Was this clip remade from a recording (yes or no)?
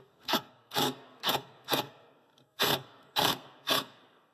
yes